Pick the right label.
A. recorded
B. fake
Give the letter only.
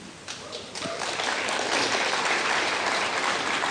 A